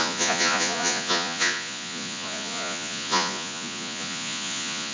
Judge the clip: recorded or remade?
remade